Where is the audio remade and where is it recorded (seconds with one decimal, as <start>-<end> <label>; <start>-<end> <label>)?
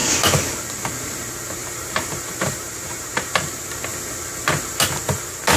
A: 0.0-1.6 recorded; 1.6-3.3 remade; 3.3-5.6 recorded